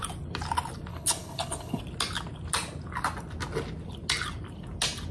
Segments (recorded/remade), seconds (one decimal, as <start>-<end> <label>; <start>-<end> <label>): 0.0-0.9 recorded; 0.9-1.8 remade; 1.8-5.1 recorded